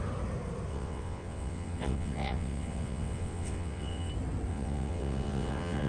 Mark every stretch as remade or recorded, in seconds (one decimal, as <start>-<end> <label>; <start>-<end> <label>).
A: 0.0-0.7 recorded; 0.7-4.1 remade; 4.1-4.5 recorded; 4.5-5.9 remade